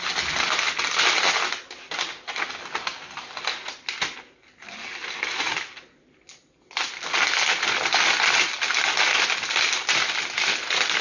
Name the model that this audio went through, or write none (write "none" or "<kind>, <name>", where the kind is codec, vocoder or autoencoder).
none